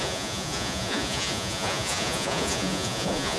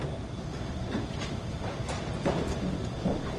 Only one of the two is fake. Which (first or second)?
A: first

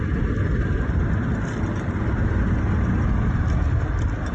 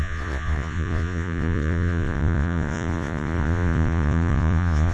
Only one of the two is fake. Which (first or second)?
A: second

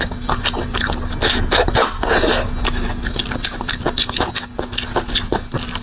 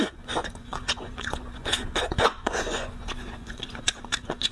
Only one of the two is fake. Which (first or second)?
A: second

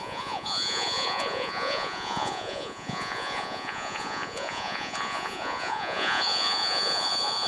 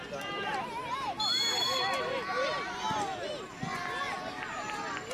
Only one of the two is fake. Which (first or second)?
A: first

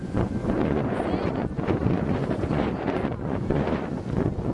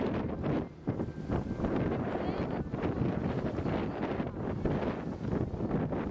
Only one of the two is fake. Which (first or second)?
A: first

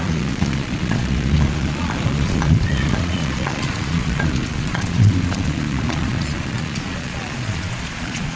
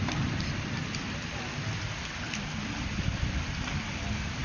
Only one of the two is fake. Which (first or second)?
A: first